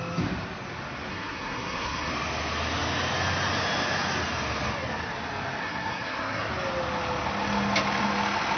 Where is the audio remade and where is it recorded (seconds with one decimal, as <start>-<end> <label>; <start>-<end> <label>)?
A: 0.0-1.1 recorded; 1.1-2.1 remade; 2.1-5.6 recorded; 5.6-6.5 remade; 6.5-8.6 recorded